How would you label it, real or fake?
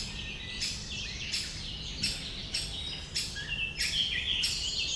real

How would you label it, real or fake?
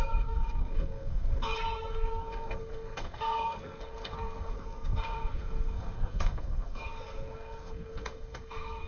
fake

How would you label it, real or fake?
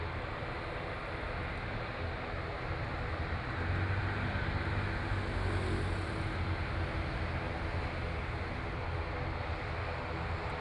real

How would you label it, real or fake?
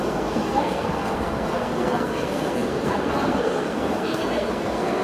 fake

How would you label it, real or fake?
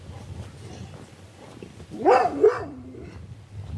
real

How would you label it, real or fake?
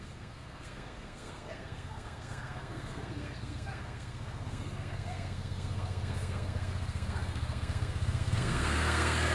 fake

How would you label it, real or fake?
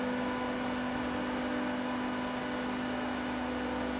real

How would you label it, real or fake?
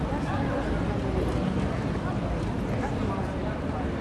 real